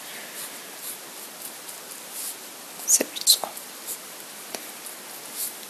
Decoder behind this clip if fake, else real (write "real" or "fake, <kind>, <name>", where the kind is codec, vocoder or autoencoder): real